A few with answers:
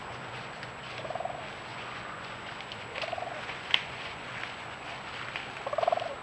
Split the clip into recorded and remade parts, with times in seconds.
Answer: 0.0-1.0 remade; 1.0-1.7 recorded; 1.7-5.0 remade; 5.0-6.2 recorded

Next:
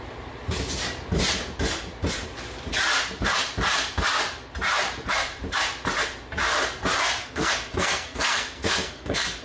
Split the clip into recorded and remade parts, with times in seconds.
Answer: 0.0-7.2 recorded; 7.2-9.4 remade

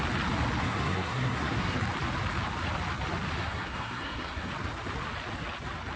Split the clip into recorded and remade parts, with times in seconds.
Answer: 0.0-0.6 recorded; 0.6-1.8 remade; 1.8-3.4 recorded; 3.4-4.5 remade; 4.5-6.0 recorded